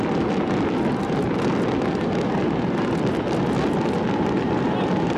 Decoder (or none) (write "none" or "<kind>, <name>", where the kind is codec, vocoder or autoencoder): none